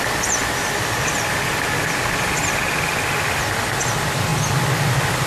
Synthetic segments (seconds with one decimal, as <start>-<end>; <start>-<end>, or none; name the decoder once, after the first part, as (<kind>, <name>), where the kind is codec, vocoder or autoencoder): 0.4-2.0 (vocoder, BigVGAN v2); 2.4-2.9